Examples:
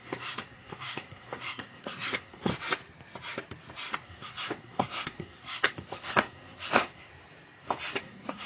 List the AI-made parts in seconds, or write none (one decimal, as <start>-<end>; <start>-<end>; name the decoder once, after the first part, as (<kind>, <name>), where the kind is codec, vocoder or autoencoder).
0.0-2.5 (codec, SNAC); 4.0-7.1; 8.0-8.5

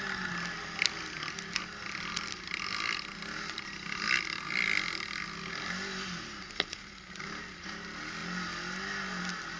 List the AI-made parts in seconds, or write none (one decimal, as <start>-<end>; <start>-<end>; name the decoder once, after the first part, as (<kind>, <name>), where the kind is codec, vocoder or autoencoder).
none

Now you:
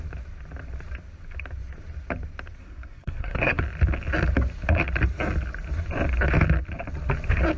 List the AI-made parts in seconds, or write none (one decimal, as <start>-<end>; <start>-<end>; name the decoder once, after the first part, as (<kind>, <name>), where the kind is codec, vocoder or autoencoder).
2.6-3.6 (codec, SNAC)